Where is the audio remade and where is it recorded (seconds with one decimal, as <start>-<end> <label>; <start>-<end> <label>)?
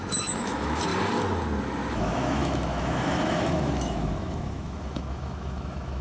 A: 0.0-0.9 remade; 0.9-1.9 recorded; 1.9-6.0 remade